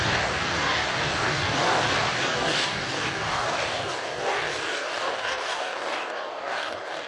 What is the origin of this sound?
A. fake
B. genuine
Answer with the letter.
A